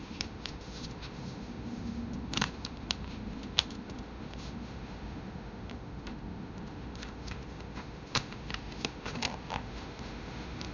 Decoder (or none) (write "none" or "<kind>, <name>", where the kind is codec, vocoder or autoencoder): autoencoder, DAC-VAE